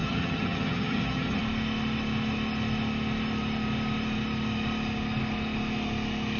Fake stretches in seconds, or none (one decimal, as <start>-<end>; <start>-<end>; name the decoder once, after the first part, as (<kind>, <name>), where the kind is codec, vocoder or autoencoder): 0.0-1.4 (vocoder, HiFi-GAN)